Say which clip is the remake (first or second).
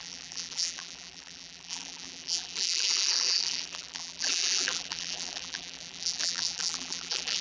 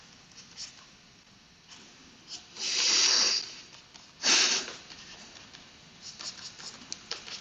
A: first